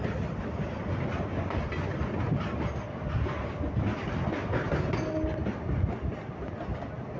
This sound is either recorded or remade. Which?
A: recorded